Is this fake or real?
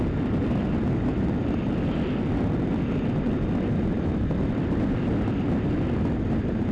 real